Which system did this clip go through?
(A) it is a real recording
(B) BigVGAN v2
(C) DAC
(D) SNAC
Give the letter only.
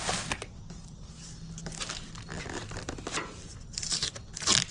A